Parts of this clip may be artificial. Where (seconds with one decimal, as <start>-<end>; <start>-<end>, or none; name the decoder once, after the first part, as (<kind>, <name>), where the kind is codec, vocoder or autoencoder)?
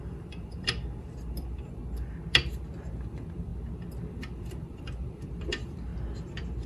0.0-1.8 (vocoder, BigVGAN v2); 2.9-3.5; 4.1-5.9